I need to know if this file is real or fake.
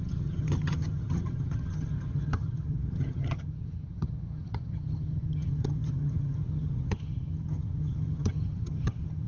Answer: fake